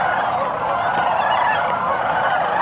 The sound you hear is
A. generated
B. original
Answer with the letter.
B